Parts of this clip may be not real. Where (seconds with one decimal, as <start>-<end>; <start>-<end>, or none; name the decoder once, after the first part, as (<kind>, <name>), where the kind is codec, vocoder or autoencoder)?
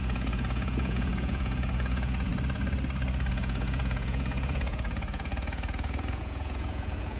0.0-2.3 (vocoder, Vocos); 3.3-7.2